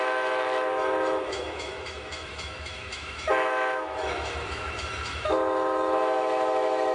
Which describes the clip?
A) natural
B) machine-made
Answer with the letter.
B